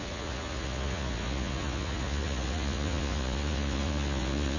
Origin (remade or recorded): remade